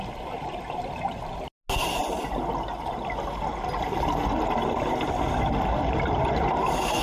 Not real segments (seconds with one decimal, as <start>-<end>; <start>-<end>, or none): none

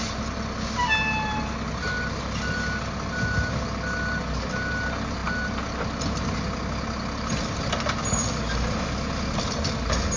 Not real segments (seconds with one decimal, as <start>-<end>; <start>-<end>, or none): none

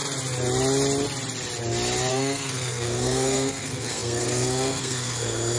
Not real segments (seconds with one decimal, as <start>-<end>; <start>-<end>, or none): 2.1-5.6